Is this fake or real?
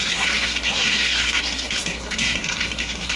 fake